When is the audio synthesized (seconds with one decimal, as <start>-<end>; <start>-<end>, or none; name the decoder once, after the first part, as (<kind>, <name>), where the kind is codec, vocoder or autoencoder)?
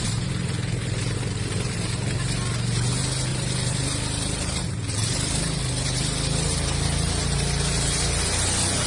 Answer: 3.3-5.4 (vocoder, BigVGAN v2)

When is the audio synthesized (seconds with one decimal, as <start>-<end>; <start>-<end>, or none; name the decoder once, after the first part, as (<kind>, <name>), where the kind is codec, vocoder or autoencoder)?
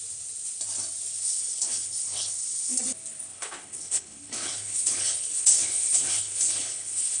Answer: 1.2-2.8 (codec, HILCodec); 3.3-7.2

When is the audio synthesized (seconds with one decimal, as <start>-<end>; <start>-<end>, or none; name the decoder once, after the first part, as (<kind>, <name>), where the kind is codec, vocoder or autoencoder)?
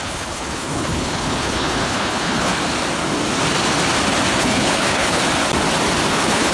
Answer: 0.0-2.5 (codec, HILCodec); 4.4-5.2; 6.1-6.5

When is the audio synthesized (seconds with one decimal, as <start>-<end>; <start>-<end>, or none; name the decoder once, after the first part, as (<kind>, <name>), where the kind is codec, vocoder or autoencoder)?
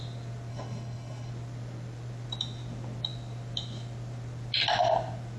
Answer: 0.5-1.3 (codec, HILCodec)